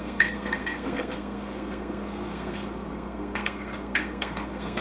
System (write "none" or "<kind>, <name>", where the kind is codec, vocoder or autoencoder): codec, SNAC